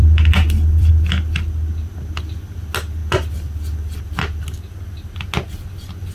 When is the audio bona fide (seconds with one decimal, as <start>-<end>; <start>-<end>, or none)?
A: 0.9-3.0; 4.0-6.1